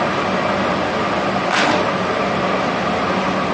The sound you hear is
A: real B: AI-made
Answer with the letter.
A